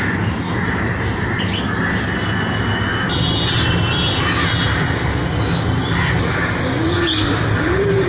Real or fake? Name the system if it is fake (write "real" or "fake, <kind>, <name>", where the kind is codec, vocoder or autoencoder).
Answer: real